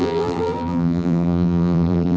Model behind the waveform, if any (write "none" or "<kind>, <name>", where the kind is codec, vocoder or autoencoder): vocoder, BigVGAN v2